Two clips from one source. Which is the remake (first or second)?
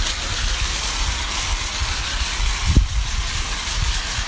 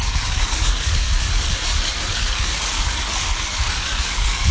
second